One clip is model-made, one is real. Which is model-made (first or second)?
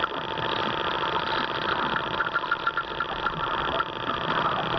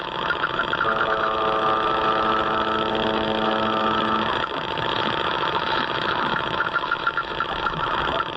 second